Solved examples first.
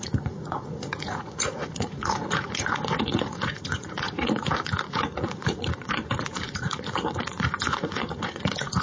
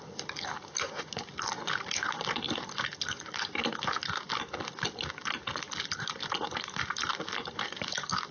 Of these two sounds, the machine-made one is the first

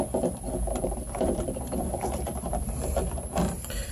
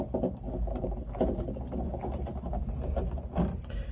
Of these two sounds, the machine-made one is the first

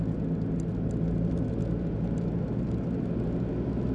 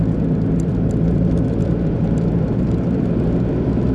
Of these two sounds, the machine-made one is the second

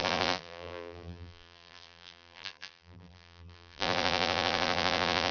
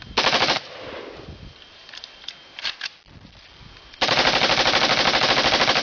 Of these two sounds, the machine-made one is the first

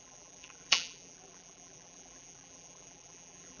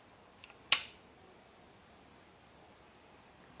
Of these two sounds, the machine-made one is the first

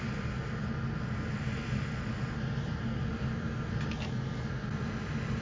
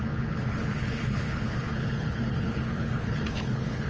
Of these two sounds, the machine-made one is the second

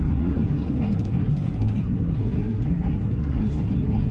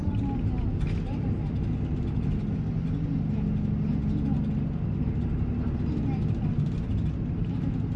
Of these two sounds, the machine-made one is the first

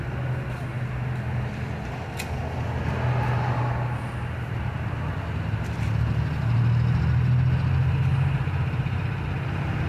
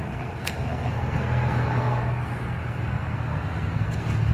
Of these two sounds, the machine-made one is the second